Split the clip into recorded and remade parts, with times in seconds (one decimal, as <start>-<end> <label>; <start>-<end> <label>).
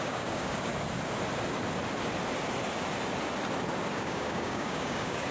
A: 0.0-0.7 remade; 0.7-3.9 recorded; 3.9-5.3 remade